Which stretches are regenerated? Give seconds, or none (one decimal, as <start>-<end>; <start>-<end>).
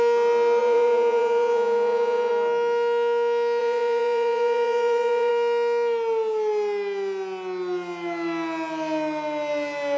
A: 0.6-2.3; 3.6-5.3